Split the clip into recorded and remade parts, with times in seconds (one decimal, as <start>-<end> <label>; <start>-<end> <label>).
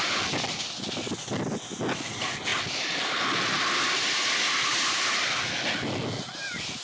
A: 0.0-6.8 recorded